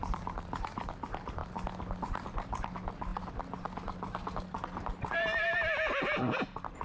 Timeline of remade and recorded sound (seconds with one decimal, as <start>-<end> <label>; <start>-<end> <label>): 0.0-6.8 recorded